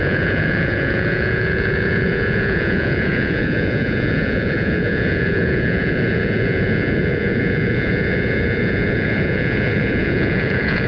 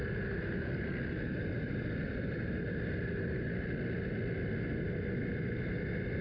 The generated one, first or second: first